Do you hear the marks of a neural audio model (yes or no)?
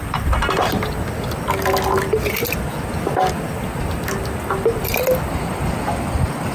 no